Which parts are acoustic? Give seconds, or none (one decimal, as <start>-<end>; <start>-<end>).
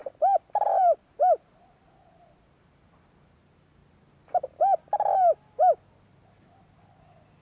0.0-0.6; 3.8-7.4